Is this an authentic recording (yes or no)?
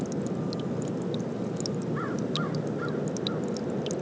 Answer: yes